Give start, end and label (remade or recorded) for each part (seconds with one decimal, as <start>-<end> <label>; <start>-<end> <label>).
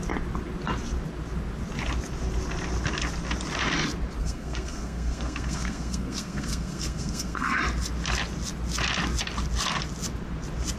0.0-4.2 recorded; 4.2-7.6 remade; 7.6-10.8 recorded